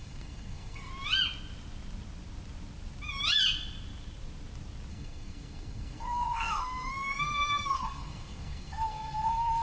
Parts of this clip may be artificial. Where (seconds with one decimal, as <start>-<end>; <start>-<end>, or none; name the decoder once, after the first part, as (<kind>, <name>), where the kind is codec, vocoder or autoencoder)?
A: 0.0-0.9 (codec, SNAC); 4.9-9.6